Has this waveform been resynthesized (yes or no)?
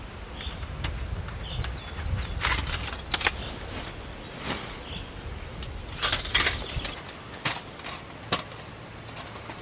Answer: no